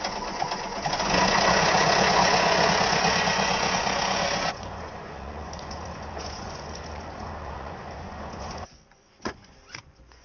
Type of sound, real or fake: fake